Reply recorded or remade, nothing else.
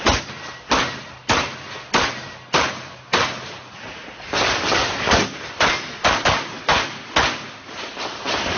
recorded